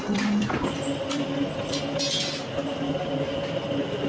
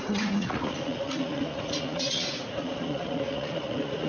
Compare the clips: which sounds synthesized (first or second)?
second